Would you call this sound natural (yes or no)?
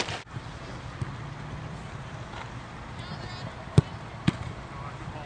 yes